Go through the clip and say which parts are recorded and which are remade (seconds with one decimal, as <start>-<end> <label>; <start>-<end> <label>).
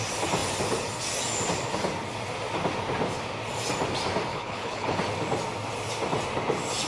0.0-4.3 recorded; 4.3-5.0 remade; 5.0-6.9 recorded